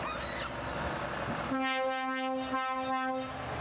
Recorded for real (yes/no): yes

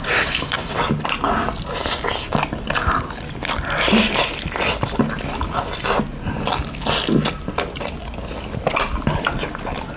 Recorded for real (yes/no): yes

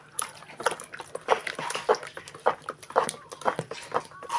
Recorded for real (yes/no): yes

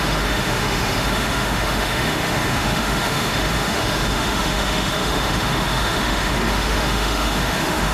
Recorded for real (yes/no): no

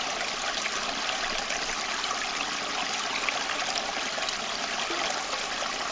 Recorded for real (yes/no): yes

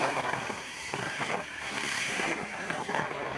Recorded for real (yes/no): no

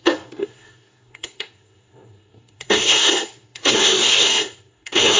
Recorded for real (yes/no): no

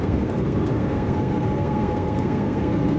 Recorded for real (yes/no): no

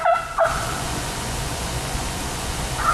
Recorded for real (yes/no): no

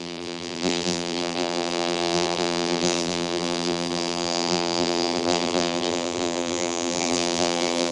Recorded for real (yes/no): no